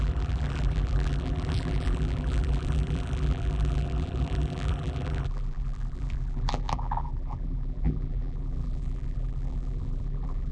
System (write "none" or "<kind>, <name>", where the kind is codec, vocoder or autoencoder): vocoder, BigVGAN v2